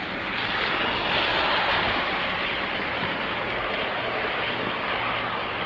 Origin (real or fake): real